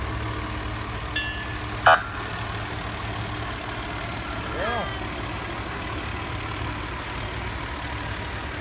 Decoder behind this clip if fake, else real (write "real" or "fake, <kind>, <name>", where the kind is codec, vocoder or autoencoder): real